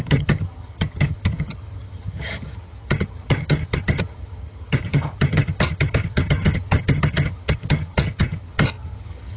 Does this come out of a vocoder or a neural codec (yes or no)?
yes